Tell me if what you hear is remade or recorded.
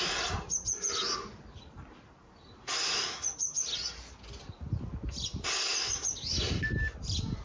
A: recorded